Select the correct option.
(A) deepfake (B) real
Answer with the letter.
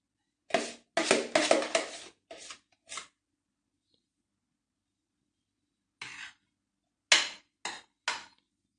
B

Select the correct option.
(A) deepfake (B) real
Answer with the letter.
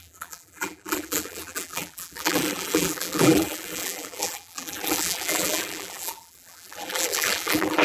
A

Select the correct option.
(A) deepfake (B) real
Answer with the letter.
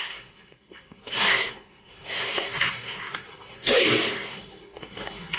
A